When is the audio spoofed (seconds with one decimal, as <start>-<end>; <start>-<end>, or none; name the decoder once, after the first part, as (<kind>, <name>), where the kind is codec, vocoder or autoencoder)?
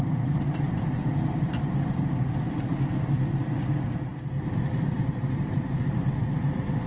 0.0-1.0 (vocoder, BigVGAN v2); 1.7-2.7; 3.3-4.1; 4.9-6.9